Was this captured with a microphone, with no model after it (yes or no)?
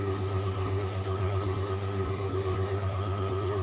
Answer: no